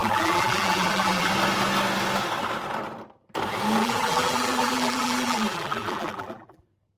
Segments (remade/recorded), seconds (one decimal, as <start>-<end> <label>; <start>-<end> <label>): 0.0-1.3 remade; 1.3-3.8 recorded; 3.8-6.6 remade; 6.6-7.0 recorded